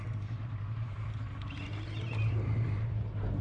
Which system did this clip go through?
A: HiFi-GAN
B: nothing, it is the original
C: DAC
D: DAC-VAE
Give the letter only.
B